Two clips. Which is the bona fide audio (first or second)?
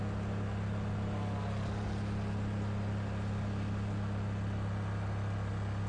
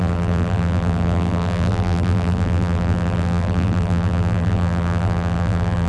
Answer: first